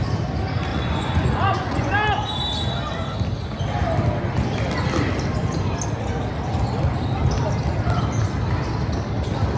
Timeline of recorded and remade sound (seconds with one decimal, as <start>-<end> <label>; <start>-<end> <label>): 0.0-0.7 recorded; 0.7-1.9 remade; 1.9-9.6 recorded